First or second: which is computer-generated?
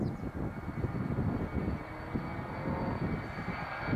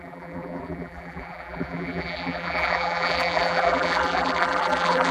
second